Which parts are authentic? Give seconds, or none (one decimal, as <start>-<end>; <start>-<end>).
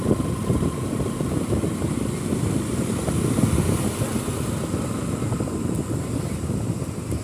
0.0-7.2